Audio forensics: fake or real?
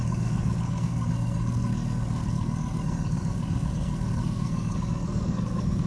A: fake